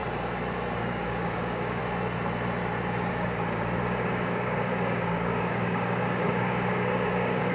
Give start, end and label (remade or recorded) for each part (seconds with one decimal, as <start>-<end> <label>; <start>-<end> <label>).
0.0-0.8 recorded; 0.8-1.8 remade; 1.8-3.1 recorded; 3.1-7.5 remade